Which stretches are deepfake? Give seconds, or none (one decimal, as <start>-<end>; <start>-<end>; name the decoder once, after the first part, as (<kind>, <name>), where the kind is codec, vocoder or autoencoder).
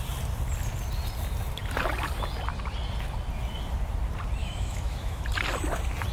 4.4-5.2 (autoencoder, DAC-VAE)